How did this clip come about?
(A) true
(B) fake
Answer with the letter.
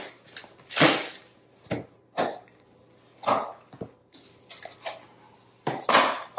A